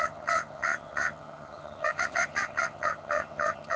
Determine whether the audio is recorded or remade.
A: remade